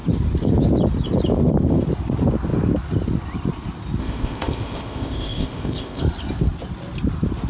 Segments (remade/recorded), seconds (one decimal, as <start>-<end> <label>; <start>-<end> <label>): 0.0-4.0 recorded; 4.0-6.0 remade; 6.0-7.5 recorded